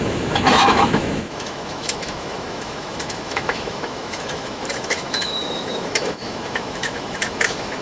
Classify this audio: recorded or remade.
remade